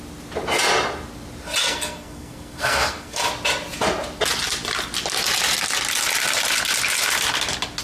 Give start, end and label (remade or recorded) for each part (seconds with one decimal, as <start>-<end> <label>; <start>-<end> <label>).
0.0-1.6 recorded; 1.6-3.3 remade; 3.3-7.8 recorded